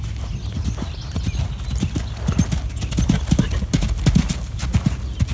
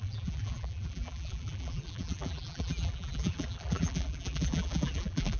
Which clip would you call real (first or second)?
first